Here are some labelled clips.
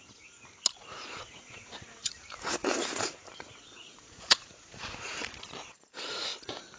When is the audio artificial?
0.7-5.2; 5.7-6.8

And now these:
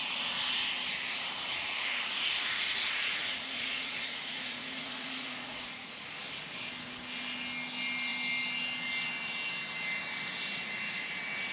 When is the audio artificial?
1.5-6.1; 10.6-11.1

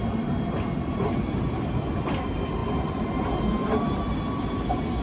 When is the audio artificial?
none

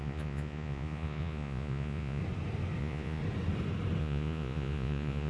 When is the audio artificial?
0.0-2.2; 2.8-3.2; 4.0-5.3

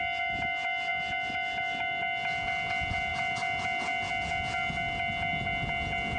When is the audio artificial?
none

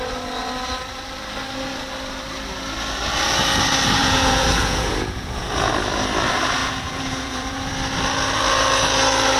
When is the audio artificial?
4.0-5.7; 6.6-7.7